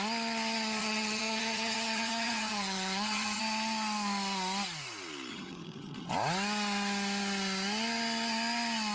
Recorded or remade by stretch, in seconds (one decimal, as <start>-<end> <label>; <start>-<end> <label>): 0.0-0.8 recorded; 0.8-3.4 remade; 3.4-5.3 recorded; 5.3-6.1 remade; 6.1-8.9 recorded